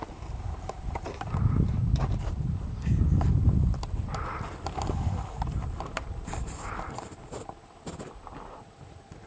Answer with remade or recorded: remade